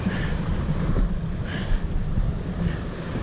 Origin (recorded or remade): recorded